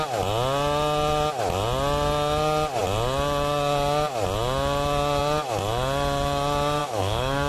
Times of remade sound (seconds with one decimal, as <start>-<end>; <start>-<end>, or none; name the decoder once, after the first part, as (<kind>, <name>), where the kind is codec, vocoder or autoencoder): 6.8-7.5 (codec, DAC)